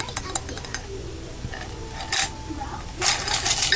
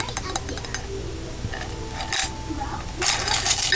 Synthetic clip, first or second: first